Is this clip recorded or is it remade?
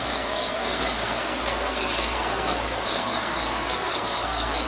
remade